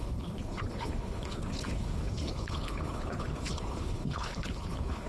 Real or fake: fake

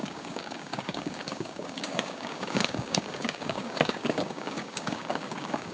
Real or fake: fake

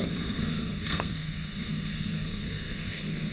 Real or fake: fake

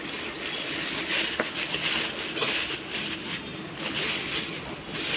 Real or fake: real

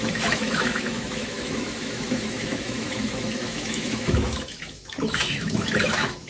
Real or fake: fake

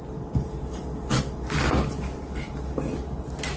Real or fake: real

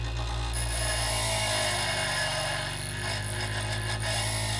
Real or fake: real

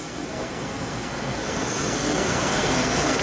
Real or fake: fake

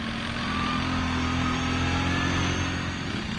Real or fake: real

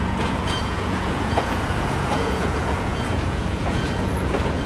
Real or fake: fake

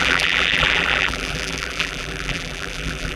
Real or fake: fake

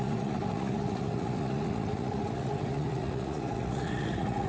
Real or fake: fake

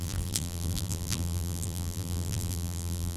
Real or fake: fake